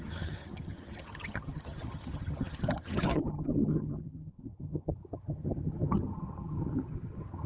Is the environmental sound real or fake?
fake